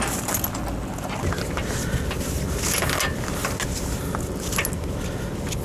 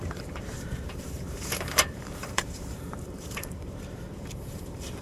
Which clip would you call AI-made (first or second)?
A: second